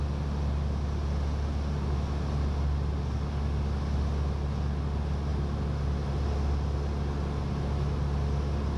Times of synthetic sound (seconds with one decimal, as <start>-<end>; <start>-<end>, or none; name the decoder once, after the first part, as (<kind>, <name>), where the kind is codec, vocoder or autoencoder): none